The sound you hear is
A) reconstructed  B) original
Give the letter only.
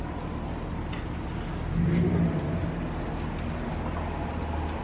B